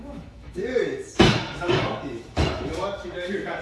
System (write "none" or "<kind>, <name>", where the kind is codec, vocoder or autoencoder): autoencoder, DAC-VAE